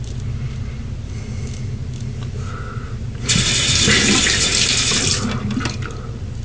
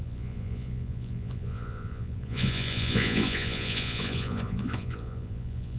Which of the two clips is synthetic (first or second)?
second